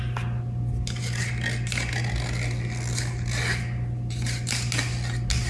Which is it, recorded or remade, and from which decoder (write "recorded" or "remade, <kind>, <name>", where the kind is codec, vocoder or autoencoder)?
recorded